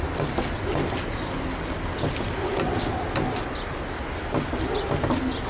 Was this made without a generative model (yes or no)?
yes